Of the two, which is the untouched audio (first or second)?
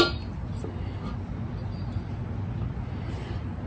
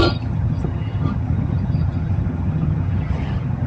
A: first